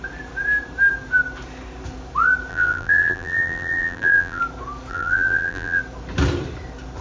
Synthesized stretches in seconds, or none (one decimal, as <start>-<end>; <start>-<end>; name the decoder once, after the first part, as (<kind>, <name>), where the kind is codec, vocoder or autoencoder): 2.5-4.4 (vocoder, BigVGAN v2); 4.9-5.8